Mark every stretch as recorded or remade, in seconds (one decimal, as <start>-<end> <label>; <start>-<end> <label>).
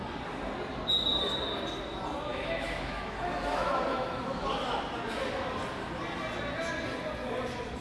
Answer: 0.0-2.3 recorded; 2.3-4.4 remade; 4.4-7.8 recorded